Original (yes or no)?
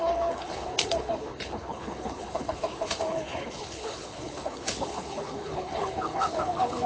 no